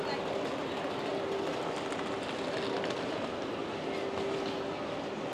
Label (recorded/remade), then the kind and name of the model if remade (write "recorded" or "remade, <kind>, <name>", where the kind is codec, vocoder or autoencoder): recorded